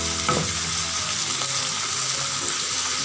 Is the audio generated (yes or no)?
no